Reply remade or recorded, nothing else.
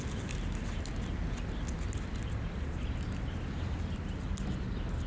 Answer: recorded